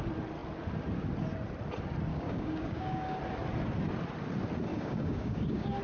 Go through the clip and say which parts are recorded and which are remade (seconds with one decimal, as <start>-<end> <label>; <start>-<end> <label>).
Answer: 0.0-2.1 recorded; 2.1-3.2 remade; 3.2-4.7 recorded; 4.7-5.8 remade

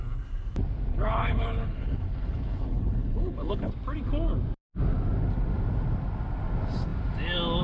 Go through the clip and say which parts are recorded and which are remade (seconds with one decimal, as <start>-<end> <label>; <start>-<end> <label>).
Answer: 0.0-0.9 recorded; 0.9-3.7 remade; 3.7-7.6 recorded

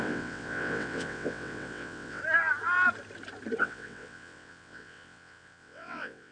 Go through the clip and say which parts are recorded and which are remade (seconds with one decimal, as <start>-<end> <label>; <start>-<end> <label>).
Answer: 0.0-2.2 remade; 2.2-3.6 recorded; 3.6-6.3 remade

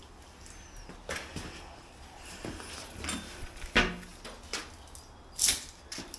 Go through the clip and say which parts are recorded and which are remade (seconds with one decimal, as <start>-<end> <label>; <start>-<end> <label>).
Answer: 0.0-6.2 recorded